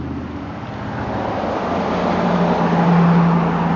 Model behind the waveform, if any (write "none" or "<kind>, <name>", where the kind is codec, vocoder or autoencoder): none